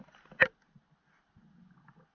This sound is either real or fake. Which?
real